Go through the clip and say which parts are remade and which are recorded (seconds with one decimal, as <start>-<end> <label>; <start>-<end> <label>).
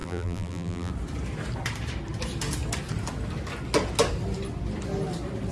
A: 0.0-0.9 remade; 0.9-5.5 recorded